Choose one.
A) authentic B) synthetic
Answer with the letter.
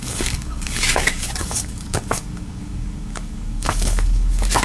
B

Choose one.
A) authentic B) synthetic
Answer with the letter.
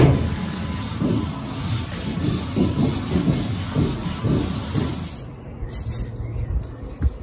A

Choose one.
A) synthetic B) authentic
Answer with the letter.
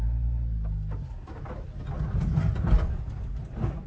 B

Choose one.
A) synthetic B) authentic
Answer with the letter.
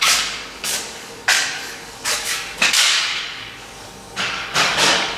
A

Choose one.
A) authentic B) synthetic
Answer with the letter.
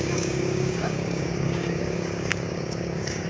B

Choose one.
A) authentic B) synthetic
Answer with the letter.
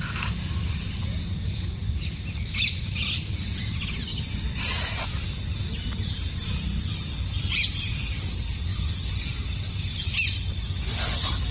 A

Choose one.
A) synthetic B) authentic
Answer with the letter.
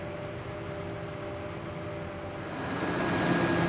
B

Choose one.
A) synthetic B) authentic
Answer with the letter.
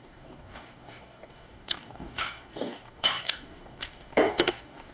A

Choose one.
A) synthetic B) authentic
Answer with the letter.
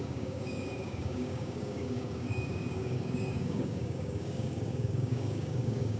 A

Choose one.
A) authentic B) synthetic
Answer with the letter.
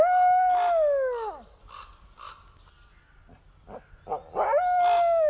A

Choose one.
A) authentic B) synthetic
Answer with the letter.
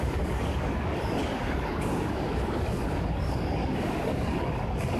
B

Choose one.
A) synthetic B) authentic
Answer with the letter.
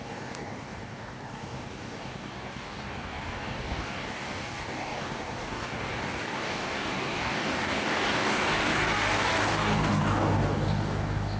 A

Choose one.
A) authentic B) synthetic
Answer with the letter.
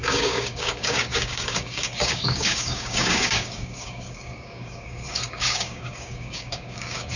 B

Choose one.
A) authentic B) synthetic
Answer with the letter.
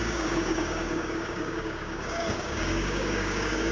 B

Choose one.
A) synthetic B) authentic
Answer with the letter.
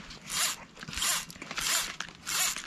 B